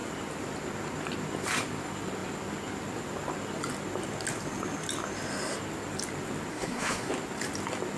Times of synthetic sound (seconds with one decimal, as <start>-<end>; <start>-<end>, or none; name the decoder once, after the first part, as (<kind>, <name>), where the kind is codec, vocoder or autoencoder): 6.5-7.1 (codec, SNAC)